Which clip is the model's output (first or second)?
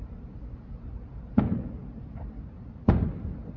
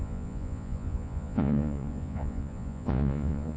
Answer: second